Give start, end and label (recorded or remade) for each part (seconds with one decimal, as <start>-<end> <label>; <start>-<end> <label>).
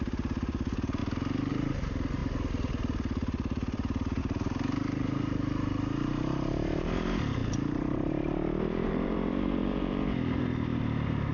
0.0-1.0 remade; 1.0-1.5 recorded; 1.5-11.3 remade